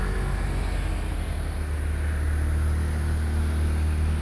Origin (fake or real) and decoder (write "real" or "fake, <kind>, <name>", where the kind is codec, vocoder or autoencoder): real